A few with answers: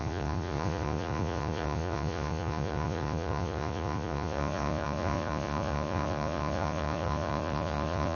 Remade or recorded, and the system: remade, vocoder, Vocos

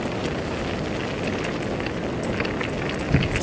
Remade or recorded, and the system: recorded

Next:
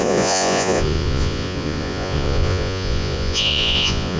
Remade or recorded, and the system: remade, vocoder, Vocos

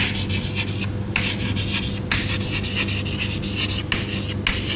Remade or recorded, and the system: recorded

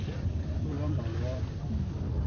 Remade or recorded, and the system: recorded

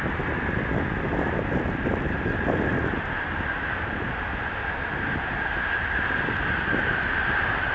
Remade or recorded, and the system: recorded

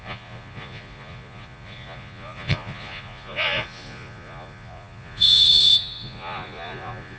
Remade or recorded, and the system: remade, vocoder, Vocos